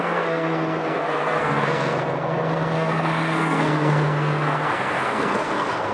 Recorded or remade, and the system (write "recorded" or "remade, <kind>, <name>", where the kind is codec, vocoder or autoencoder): remade, codec, SNAC